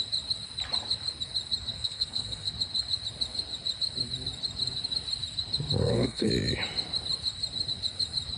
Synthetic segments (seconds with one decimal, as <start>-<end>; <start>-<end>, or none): 1.7-2.5; 5.8-6.3